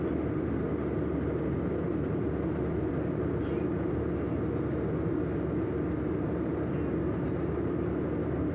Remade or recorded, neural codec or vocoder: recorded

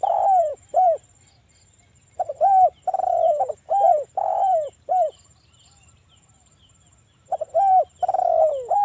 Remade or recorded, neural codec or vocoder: remade, vocoder, BigVGAN v2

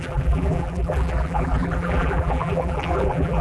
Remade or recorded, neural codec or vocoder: remade, vocoder, BigVGAN v2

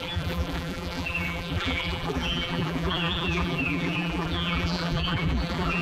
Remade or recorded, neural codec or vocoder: remade, vocoder, BigVGAN v2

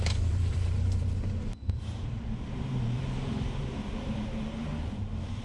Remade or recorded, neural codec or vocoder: remade, vocoder, BigVGAN v2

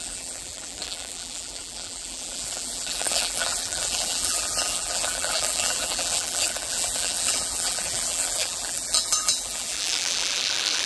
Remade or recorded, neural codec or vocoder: remade, vocoder, BigVGAN v2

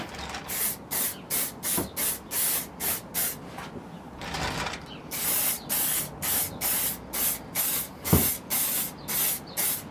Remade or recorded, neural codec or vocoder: recorded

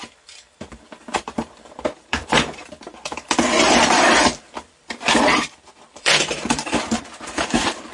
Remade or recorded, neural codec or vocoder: remade, vocoder, BigVGAN v2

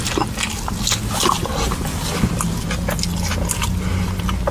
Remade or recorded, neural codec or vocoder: recorded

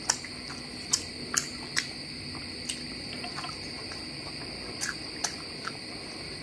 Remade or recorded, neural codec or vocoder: remade, vocoder, BigVGAN v2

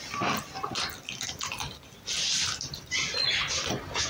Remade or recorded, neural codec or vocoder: recorded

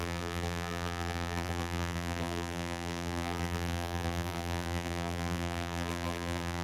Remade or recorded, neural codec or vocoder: remade, vocoder, BigVGAN v2